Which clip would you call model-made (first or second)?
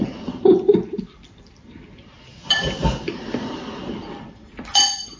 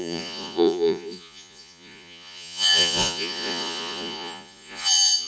second